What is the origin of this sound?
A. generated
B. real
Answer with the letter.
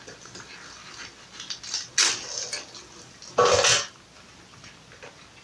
B